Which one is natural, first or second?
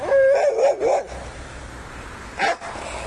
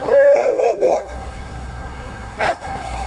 first